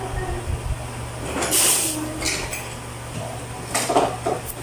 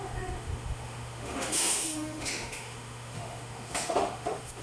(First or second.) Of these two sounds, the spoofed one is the second